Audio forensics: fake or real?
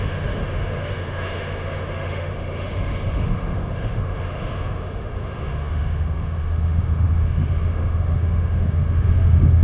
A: fake